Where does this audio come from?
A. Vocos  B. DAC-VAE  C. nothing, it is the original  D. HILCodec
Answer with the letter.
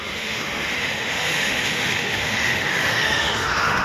B